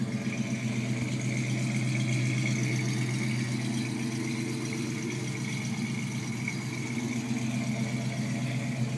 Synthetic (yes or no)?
no